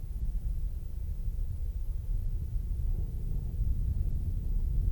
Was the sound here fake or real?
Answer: real